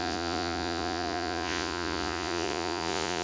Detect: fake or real fake